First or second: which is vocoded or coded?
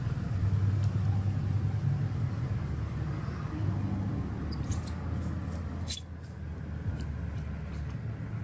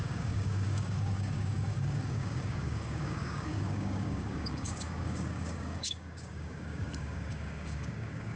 second